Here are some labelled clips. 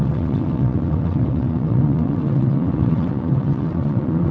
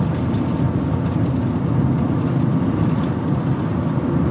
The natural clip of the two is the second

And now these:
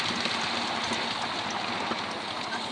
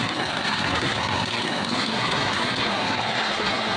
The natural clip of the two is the first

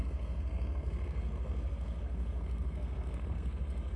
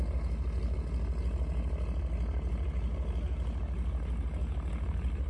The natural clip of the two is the second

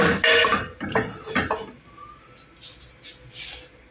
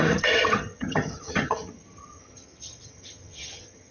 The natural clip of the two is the first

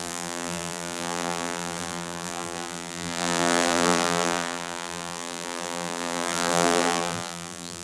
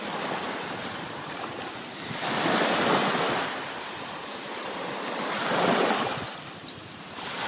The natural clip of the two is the second